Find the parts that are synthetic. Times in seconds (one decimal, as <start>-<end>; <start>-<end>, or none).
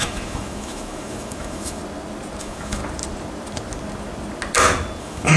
0.0-1.8; 2.4-2.8; 5.0-5.4